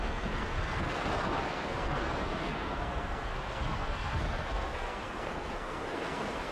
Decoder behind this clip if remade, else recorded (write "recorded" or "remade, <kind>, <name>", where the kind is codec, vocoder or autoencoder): remade, codec, SNAC